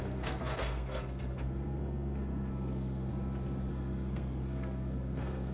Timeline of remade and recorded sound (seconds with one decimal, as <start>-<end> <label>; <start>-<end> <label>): 0.0-3.1 remade; 3.1-3.7 recorded; 3.7-5.5 remade